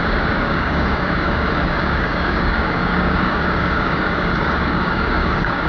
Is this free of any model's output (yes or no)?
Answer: no